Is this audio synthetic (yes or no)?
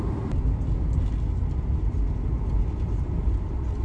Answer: no